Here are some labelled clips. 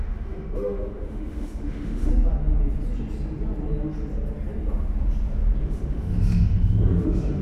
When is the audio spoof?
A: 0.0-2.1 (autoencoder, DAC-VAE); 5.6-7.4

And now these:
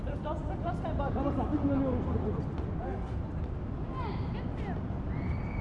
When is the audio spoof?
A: none

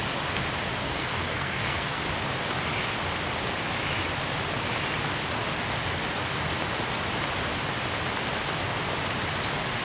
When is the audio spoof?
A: 0.8-2.0 (codec, SNAC)

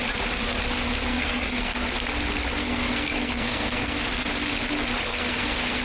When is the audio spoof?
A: 1.1-1.9 (codec, SNAC); 2.6-4.3; 5.1-5.8